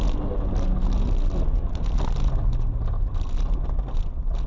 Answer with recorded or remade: recorded